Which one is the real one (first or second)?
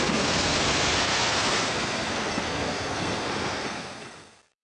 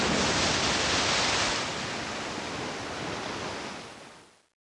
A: second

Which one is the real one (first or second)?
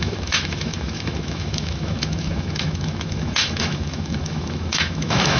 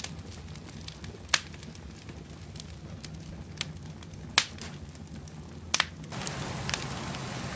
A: second